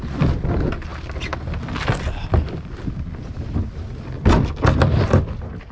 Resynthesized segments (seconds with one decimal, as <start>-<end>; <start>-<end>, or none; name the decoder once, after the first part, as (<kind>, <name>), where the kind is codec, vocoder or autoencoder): none